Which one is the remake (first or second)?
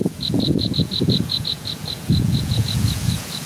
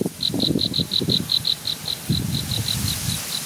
first